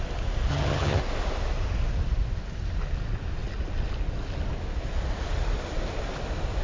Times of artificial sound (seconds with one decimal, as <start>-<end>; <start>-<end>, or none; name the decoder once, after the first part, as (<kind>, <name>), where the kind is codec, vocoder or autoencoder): 0.5-1.0 (vocoder, HiFi-GAN)